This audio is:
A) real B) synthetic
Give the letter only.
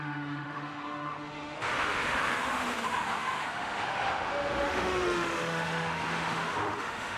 B